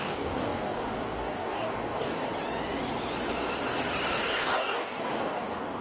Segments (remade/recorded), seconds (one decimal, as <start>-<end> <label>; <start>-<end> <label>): 0.0-2.3 remade; 2.3-4.4 recorded; 4.4-5.8 remade